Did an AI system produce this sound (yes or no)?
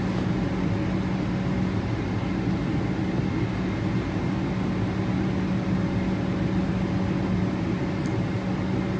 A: no